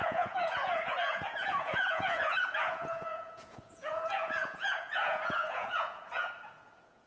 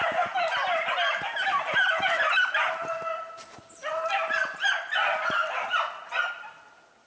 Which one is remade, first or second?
first